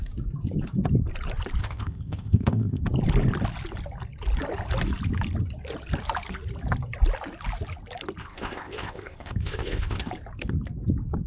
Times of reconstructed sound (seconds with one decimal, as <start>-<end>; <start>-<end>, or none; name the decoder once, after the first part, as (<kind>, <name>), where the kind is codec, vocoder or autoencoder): 1.6-2.8 (codec, ZipCodec); 8.2-10.1